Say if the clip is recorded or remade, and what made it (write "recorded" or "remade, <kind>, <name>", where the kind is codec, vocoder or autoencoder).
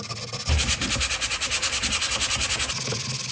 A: recorded